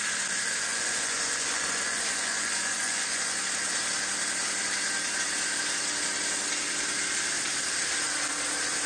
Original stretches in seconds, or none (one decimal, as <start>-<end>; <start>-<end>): 0.0-0.7; 3.4-8.9